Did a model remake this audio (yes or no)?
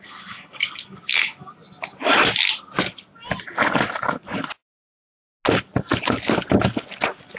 no